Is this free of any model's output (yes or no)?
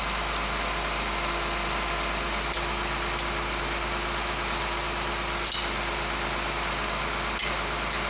yes